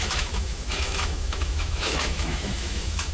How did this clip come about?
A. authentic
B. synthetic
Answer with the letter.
B